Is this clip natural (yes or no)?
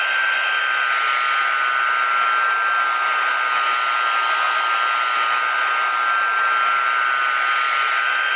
yes